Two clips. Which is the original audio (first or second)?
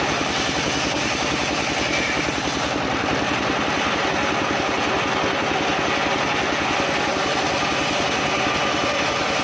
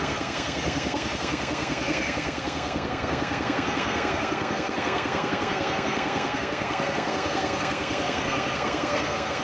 first